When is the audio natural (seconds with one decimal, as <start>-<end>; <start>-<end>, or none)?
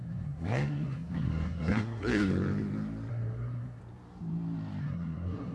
2.3-3.1; 3.8-4.8